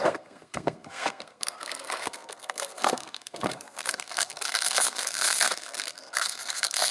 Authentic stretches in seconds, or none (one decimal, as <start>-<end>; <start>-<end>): none